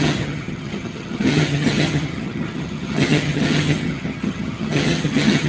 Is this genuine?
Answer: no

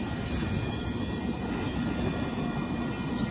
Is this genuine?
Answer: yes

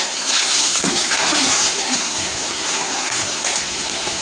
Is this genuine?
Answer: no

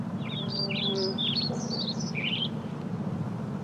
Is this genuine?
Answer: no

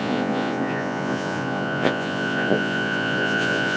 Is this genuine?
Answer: no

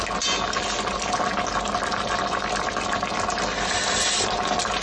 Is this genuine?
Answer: yes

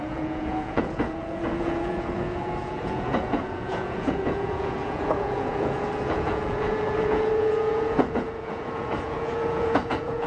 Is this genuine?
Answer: no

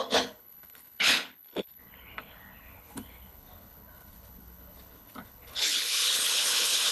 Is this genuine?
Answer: no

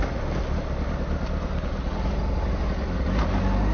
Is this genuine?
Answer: yes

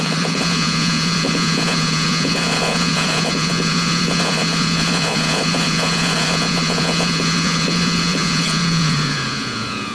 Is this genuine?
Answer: no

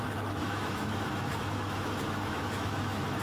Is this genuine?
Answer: no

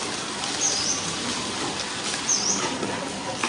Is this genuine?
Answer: yes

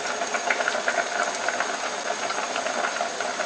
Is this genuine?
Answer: yes